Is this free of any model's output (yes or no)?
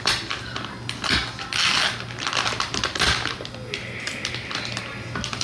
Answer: yes